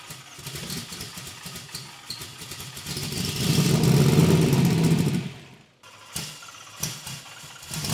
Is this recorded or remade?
recorded